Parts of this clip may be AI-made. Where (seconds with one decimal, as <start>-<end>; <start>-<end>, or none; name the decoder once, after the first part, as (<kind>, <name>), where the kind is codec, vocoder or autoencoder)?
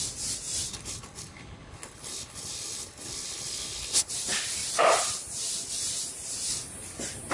0.7-4.1 (codec, HILCodec)